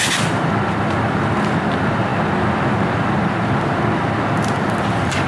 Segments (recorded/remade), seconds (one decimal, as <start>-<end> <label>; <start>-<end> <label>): 0.0-5.3 recorded